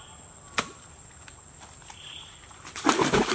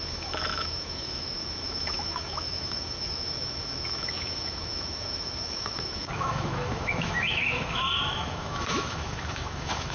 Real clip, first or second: first